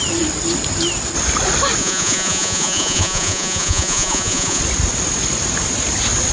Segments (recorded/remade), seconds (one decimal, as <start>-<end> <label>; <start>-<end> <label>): 0.0-1.8 recorded; 1.8-4.6 remade; 4.6-6.3 recorded